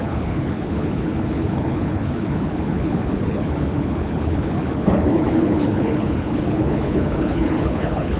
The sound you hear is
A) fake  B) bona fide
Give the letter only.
A